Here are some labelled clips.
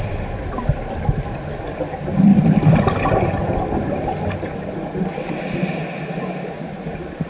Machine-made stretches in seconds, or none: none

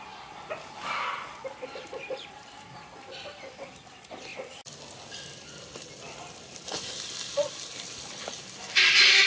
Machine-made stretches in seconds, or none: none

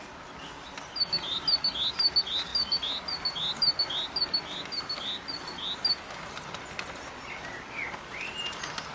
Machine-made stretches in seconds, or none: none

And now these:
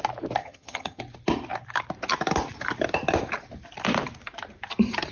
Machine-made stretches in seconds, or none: 0.4-1.0

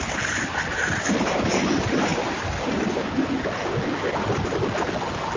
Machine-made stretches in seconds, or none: none

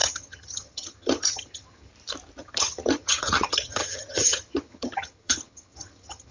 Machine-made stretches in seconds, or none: 0.0-1.9; 2.4-6.3

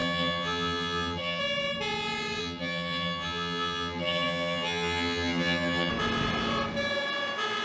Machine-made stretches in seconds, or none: 0.0-1.4; 2.4-5.9